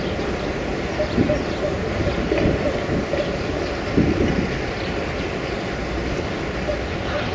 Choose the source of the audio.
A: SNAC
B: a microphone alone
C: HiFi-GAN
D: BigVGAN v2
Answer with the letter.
B